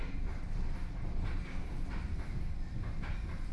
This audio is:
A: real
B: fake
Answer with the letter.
A